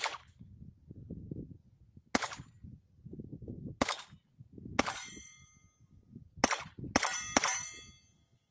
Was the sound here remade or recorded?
recorded